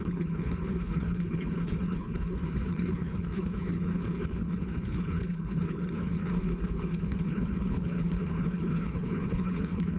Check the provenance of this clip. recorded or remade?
remade